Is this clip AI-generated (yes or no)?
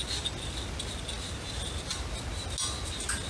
no